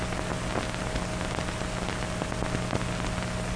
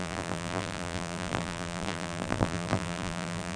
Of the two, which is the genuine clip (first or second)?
first